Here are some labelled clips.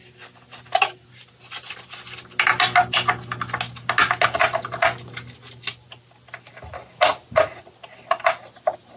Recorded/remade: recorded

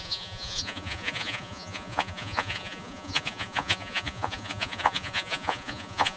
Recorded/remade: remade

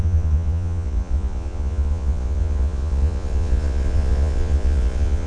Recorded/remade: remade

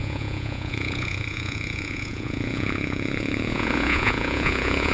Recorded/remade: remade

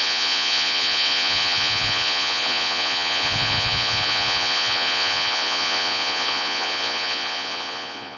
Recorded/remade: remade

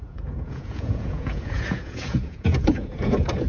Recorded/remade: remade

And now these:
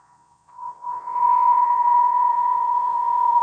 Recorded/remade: remade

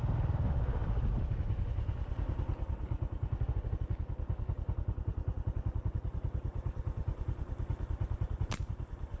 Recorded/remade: recorded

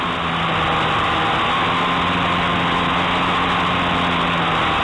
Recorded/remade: recorded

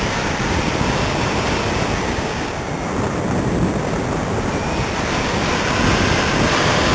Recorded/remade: recorded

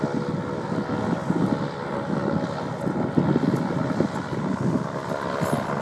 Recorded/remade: recorded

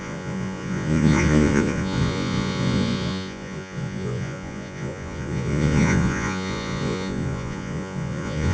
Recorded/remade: remade